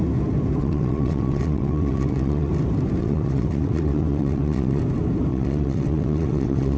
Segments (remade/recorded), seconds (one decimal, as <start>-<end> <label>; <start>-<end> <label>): 0.0-0.6 recorded; 0.6-2.5 remade; 2.5-3.0 recorded; 3.0-4.8 remade; 4.8-5.3 recorded; 5.3-6.8 remade